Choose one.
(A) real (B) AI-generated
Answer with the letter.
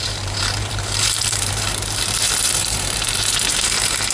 B